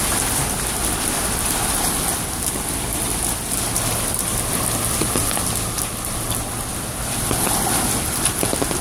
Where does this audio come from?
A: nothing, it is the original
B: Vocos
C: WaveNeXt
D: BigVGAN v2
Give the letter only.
A